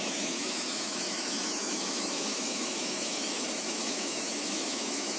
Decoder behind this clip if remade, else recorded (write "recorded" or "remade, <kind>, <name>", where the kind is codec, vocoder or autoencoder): remade, autoencoder, DAC-VAE